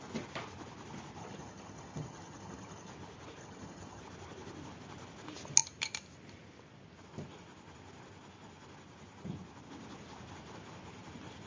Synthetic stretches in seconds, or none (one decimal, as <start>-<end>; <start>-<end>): 1.2-2.9; 3.4-4.0